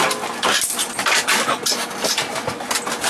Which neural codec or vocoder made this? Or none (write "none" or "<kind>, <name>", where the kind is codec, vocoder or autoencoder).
vocoder, BigVGAN v2